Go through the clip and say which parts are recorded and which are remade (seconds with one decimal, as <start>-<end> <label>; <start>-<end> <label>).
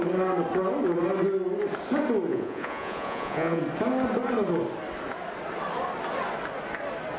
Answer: 0.0-2.3 recorded; 2.3-3.6 remade; 3.6-7.2 recorded